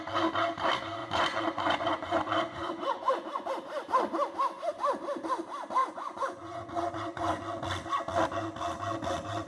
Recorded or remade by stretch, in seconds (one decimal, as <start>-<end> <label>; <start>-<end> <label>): 0.0-1.0 recorded; 1.0-3.5 remade; 3.5-5.8 recorded; 5.8-7.4 remade; 7.4-9.5 recorded